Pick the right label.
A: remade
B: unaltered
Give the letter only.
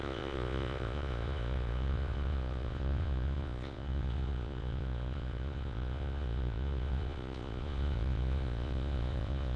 A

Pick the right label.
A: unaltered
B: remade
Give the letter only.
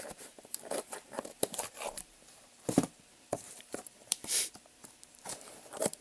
B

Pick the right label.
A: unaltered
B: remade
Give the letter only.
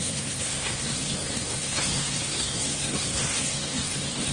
B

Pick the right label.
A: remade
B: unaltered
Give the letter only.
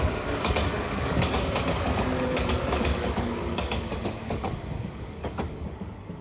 A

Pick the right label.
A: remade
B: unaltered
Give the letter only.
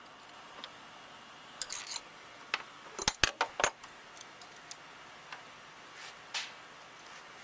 B